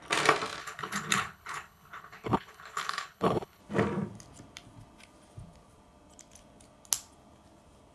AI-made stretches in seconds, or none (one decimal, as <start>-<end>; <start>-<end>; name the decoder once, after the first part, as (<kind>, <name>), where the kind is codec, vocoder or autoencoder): 0.6-3.6 (codec, HILCodec)